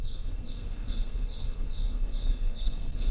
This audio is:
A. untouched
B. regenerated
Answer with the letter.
B